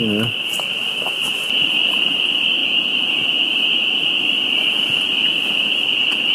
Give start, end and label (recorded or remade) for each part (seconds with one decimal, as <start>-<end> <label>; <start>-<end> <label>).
0.0-1.3 recorded; 1.3-2.2 remade; 2.2-6.3 recorded